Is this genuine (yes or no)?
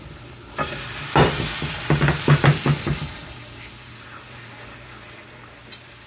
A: yes